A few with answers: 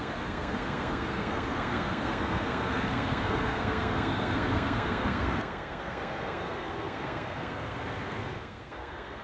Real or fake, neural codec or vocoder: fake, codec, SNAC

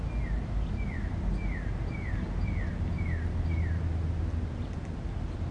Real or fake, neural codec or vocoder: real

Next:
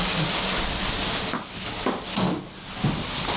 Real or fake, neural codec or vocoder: real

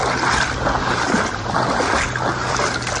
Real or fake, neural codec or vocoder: real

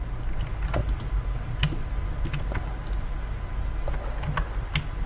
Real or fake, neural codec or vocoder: real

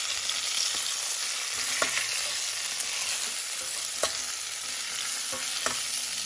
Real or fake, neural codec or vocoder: real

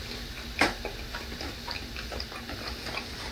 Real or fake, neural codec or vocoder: real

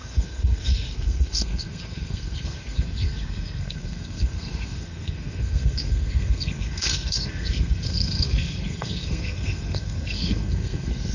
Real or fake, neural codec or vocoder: fake, codec, SNAC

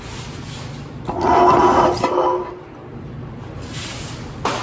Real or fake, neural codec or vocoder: real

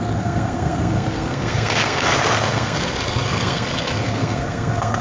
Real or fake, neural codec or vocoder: fake, codec, SNAC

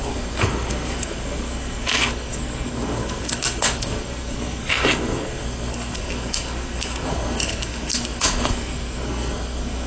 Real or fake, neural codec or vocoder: fake, codec, SNAC